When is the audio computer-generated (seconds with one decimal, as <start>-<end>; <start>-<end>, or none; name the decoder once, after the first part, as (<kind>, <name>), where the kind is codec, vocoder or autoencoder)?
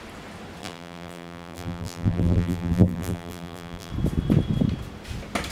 0.6-3.9 (vocoder, BigVGAN v2)